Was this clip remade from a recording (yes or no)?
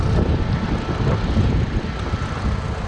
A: no